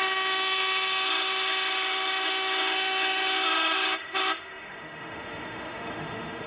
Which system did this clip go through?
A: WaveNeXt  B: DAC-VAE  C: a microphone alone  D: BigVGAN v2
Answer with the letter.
B